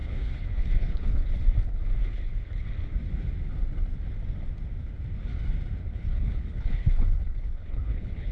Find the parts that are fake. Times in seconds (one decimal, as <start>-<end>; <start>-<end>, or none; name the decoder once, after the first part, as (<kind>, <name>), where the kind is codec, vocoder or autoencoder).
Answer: 0.0-1.3 (codec, HILCodec); 2.0-2.7; 5.8-8.3